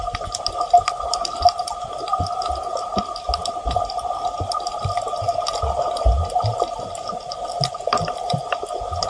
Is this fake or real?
real